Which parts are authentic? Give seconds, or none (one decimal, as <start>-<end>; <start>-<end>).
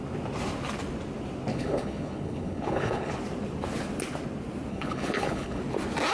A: 0.0-1.5; 3.1-4.7; 5.6-6.1